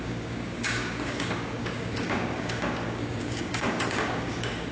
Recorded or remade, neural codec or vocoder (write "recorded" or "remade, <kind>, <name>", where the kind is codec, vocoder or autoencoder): remade, codec, DAC